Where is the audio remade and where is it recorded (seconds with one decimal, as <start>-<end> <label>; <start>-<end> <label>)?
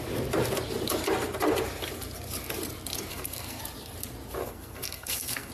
0.0-3.1 recorded; 3.1-3.6 remade; 3.6-4.4 recorded; 4.4-5.5 remade